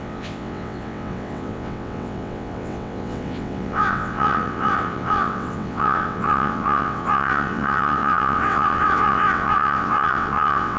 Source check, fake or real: fake